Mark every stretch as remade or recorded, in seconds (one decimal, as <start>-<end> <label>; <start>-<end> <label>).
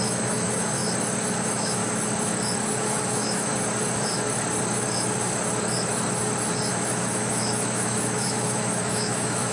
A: 0.0-0.8 remade; 0.8-1.3 recorded; 1.3-1.8 remade; 1.8-2.8 recorded; 2.8-3.5 remade; 3.5-6.7 recorded; 6.7-9.5 remade